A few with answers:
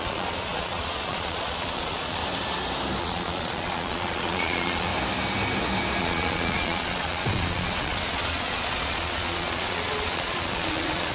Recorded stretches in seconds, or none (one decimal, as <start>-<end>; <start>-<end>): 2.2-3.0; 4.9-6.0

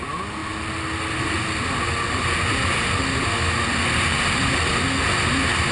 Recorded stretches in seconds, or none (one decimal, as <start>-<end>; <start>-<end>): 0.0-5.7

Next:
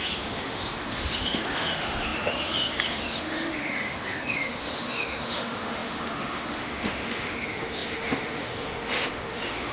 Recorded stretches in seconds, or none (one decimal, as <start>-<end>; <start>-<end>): none

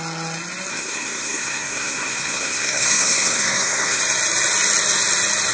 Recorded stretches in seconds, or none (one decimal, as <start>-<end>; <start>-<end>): 0.0-0.7; 4.0-5.5